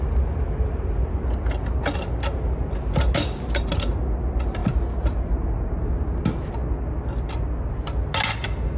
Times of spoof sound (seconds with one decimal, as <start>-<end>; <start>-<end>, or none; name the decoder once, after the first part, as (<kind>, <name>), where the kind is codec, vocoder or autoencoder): none